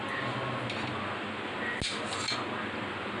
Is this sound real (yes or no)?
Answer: yes